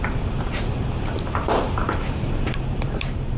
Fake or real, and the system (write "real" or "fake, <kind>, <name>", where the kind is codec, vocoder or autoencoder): fake, vocoder, BigVGAN v2